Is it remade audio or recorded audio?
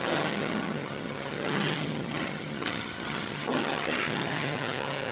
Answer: remade